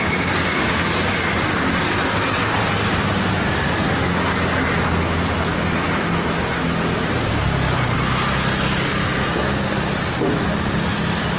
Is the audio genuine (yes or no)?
yes